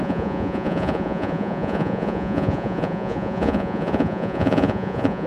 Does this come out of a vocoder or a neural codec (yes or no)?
yes